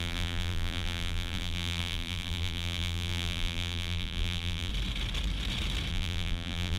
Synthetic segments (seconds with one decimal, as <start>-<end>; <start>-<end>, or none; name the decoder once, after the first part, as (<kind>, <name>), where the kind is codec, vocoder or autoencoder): 0.0-4.7 (vocoder, BigVGAN v2); 5.9-6.8

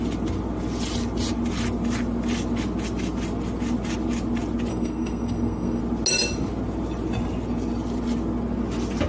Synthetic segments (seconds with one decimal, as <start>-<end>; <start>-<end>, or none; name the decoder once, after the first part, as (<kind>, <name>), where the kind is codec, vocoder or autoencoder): 4.7-5.8 (codec, SNAC)

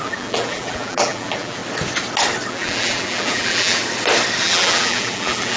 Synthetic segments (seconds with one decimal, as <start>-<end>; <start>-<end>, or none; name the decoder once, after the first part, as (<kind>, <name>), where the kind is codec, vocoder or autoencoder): 0.0-1.6 (vocoder, BigVGAN v2); 2.5-3.8; 4.4-5.6

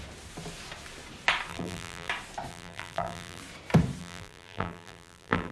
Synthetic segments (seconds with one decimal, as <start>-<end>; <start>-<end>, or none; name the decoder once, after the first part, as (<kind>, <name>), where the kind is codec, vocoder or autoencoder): 1.5-2.1 (vocoder, BigVGAN v2); 2.5-3.4; 4.0-5.5

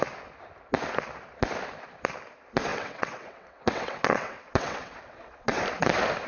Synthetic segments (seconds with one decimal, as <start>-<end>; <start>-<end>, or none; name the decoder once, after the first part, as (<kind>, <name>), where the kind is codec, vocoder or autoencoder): 2.7-5.6 (vocoder, WaveNeXt)